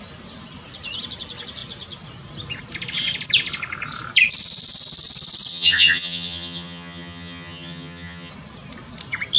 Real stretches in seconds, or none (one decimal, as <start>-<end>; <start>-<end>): 0.0-5.5; 8.3-9.4